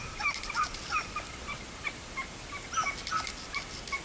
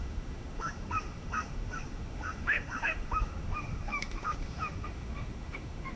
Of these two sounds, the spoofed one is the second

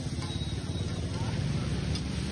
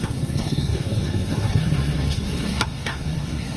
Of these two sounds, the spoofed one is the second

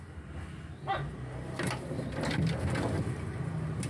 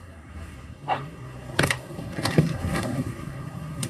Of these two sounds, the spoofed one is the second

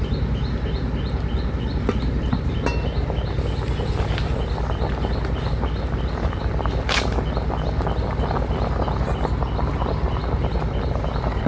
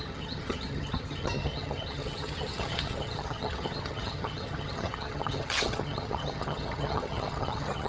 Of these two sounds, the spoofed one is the second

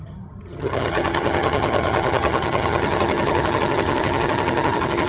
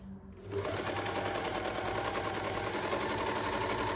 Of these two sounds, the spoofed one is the first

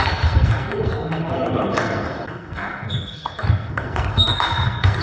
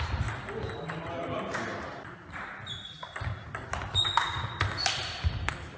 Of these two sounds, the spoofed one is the first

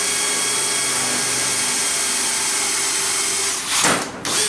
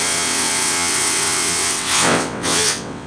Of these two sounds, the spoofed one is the second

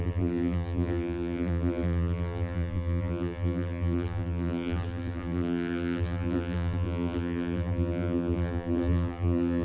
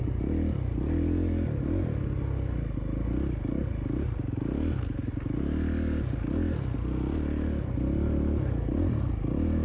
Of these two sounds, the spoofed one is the first